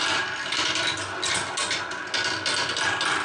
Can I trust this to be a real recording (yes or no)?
yes